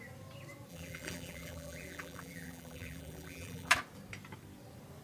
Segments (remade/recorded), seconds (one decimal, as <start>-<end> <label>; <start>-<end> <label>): 0.0-0.7 recorded; 0.7-3.7 remade; 3.7-5.0 recorded